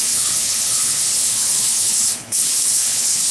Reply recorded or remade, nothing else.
remade